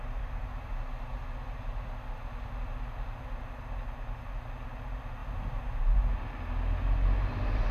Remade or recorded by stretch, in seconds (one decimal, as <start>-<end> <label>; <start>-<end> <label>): 0.0-7.7 recorded